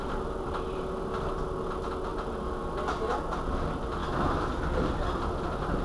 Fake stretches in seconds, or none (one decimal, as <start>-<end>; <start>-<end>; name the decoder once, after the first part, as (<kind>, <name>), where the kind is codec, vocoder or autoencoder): 4.0-4.5 (autoencoder, DAC-VAE)